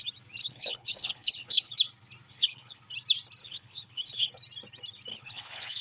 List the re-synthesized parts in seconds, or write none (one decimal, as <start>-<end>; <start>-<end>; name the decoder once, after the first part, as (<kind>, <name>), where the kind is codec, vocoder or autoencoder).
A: 0.4-1.8 (codec, HILCodec); 2.3-2.8; 3.4-4.3; 5.1-5.8